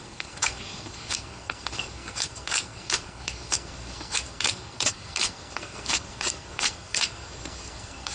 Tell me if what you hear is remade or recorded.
remade